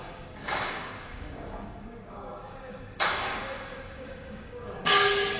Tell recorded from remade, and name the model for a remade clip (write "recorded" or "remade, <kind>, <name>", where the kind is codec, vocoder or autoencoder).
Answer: remade, codec, DAC